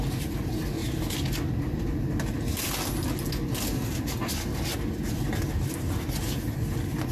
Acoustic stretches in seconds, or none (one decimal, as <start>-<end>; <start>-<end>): 0.0-7.1